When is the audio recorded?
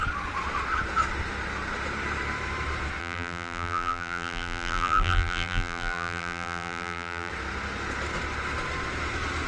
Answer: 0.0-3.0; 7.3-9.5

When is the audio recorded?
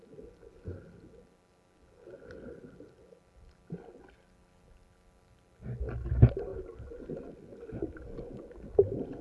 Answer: 0.0-9.2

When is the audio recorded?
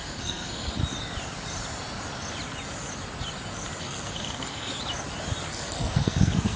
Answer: 0.8-3.8; 4.7-5.5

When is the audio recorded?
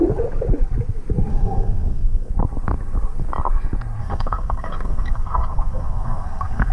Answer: 0.0-1.3; 2.3-4.0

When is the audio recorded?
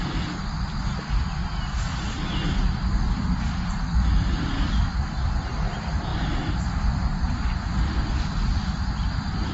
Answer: 0.0-9.5